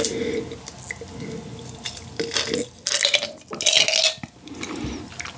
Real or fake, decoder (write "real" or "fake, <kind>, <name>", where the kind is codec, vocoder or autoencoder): real